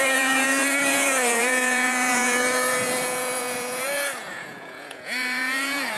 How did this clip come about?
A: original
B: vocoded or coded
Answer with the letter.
B